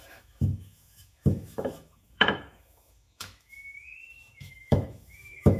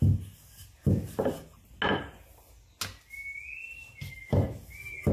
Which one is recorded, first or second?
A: second